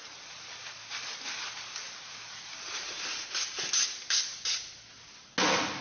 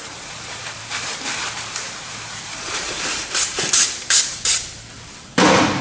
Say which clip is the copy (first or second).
second